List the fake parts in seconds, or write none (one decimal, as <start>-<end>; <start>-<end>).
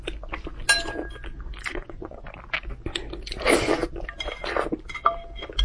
1.7-2.3